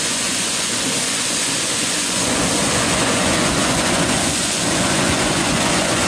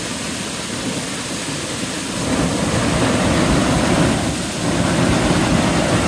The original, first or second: second